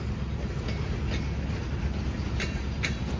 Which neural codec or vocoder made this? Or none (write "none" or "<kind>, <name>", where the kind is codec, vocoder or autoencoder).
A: none